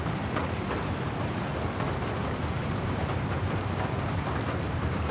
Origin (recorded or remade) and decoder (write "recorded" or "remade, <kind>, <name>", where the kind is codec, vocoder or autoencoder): remade, vocoder, BigVGAN v2